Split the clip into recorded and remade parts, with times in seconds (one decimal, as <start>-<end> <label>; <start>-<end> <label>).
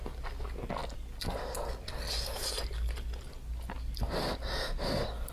0.0-5.3 recorded